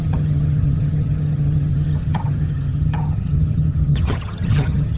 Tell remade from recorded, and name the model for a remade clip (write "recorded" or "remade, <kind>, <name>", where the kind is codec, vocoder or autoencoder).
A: remade, vocoder, HiFi-GAN